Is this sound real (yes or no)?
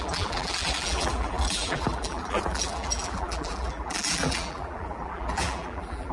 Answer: no